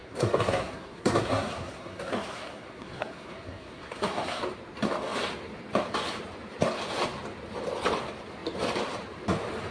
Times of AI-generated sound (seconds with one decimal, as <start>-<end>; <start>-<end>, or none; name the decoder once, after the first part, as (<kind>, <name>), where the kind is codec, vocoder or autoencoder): 0.0-4.4 (codec, SNAC)